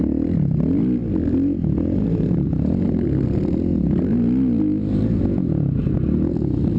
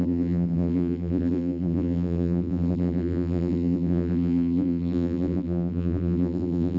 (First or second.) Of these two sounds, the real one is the first